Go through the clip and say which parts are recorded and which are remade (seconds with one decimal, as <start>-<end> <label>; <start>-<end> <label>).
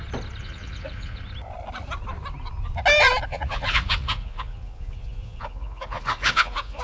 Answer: 0.0-0.4 recorded; 0.4-1.2 remade; 1.2-3.3 recorded; 3.3-6.8 remade